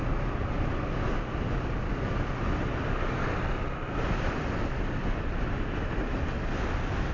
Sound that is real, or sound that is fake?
real